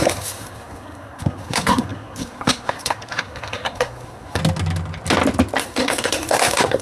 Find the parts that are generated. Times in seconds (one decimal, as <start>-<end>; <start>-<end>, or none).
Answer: 0.0-4.4; 5.6-6.8